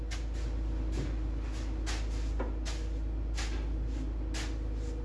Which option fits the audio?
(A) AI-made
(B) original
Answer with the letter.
B